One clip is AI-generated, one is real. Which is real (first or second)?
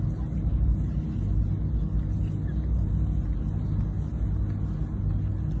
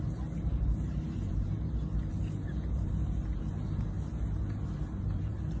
first